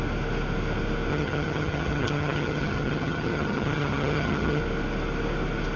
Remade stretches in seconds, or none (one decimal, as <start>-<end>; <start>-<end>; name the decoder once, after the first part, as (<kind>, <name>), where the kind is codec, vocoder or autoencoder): 1.1-4.6 (vocoder, HiFi-GAN)